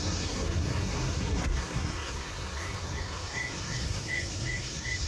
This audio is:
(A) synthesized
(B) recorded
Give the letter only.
A